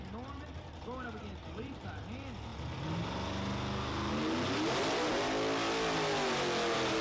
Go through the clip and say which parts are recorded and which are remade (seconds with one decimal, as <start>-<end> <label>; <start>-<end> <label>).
0.0-1.4 recorded; 1.4-1.9 remade; 1.9-7.0 recorded

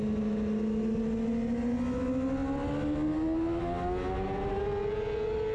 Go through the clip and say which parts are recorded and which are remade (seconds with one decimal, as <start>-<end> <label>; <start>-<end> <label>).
0.0-5.5 recorded

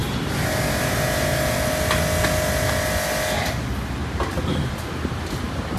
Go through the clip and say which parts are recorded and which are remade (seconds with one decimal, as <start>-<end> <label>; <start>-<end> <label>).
0.0-5.8 recorded

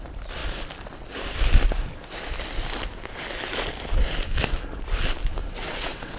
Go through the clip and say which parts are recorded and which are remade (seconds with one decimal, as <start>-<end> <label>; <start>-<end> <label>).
0.0-5.4 recorded; 5.4-6.2 remade

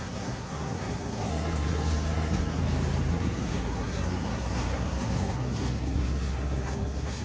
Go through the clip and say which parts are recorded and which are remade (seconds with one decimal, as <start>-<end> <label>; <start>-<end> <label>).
0.0-2.6 remade; 2.6-3.1 recorded; 3.1-7.2 remade

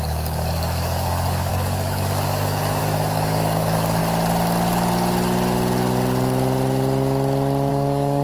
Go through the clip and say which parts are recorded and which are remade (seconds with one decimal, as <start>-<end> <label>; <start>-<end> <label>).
0.0-4.0 remade; 4.0-7.7 recorded; 7.7-8.2 remade

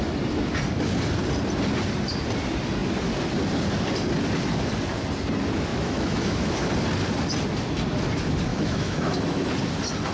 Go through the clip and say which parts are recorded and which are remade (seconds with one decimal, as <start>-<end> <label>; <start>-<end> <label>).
0.0-5.7 recorded; 5.7-6.7 remade; 6.7-8.5 recorded; 8.5-9.5 remade; 9.5-10.1 recorded